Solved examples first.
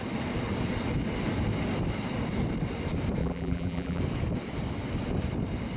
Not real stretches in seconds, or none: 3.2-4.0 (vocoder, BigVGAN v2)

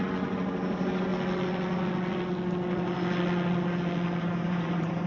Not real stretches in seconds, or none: 0.0-1.1 (vocoder, BigVGAN v2); 4.2-5.1

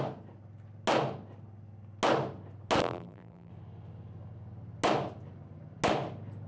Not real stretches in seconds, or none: 2.8-3.5 (vocoder, BigVGAN v2)